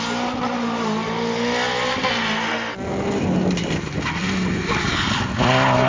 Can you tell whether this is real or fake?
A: real